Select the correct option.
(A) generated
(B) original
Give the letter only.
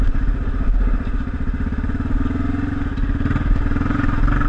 B